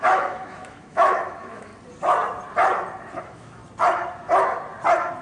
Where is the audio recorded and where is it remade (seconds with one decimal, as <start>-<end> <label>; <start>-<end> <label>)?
0.0-1.7 remade; 1.7-3.2 recorded; 3.2-3.6 remade; 3.6-5.2 recorded